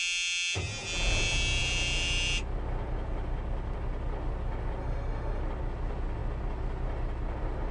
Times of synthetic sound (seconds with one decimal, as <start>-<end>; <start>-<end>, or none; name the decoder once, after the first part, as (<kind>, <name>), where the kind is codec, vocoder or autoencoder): 4.8-5.4 (autoencoder, DAC-VAE)